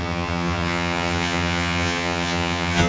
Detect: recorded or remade remade